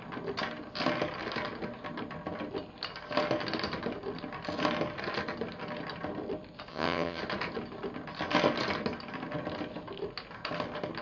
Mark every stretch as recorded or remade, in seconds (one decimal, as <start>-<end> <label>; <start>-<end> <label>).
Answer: 0.0-6.7 recorded; 6.7-7.2 remade; 7.2-11.0 recorded